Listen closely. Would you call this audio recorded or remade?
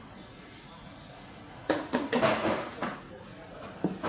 remade